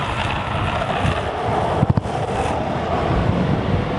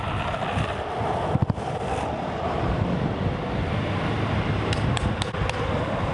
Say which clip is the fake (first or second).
second